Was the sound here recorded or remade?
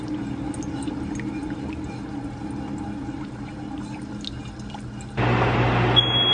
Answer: recorded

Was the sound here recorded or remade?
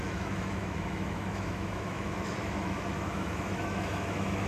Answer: remade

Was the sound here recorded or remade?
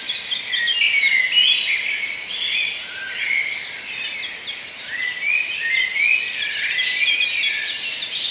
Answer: recorded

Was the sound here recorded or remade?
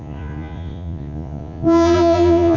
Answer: remade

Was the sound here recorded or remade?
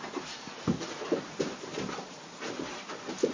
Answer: recorded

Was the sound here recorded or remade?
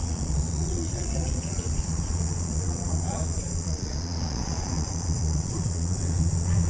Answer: remade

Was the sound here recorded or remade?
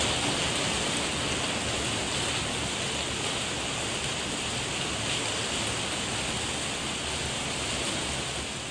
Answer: recorded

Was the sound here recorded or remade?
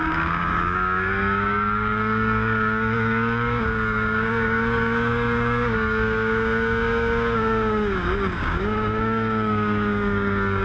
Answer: remade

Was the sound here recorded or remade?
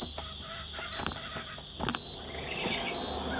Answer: recorded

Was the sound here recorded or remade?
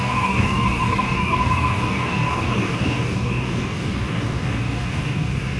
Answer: remade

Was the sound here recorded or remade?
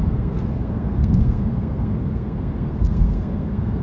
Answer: remade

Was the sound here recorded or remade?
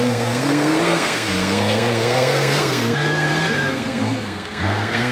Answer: remade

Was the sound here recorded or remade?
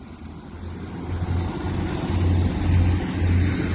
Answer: recorded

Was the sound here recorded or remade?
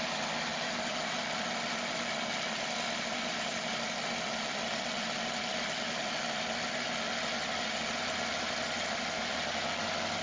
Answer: recorded